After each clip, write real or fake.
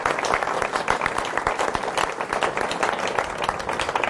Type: real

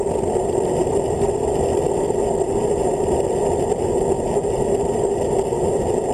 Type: real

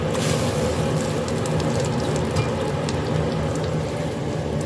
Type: real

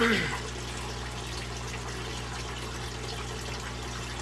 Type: real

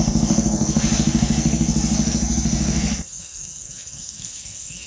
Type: fake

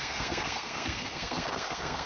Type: fake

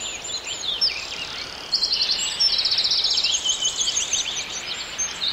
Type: real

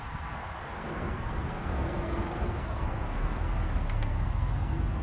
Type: fake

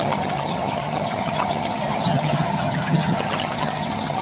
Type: fake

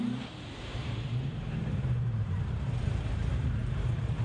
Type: fake